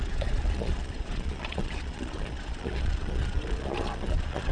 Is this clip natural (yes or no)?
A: no